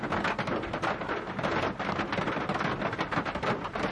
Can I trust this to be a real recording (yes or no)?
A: yes